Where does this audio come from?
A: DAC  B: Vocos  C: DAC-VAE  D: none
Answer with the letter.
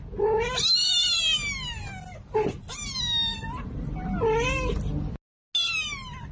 D